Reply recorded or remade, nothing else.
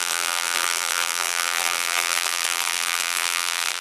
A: remade